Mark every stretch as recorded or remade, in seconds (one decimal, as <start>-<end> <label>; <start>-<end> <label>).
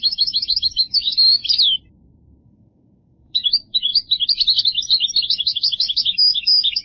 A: 0.0-1.4 remade; 1.4-2.4 recorded; 2.4-3.9 remade; 3.9-5.2 recorded; 5.2-6.8 remade